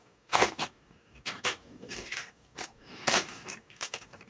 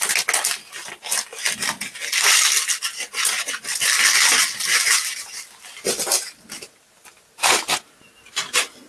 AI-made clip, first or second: first